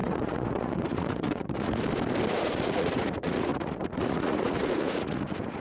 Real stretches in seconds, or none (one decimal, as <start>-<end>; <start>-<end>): 1.8-2.4